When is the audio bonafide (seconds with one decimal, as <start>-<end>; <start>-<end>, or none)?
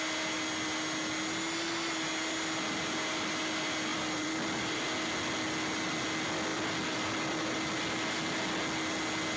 0.0-3.9; 4.8-6.5; 7.7-9.4